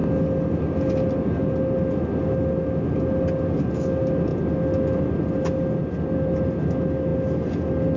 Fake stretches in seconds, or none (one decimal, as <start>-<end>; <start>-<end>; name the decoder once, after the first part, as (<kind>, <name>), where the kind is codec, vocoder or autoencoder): none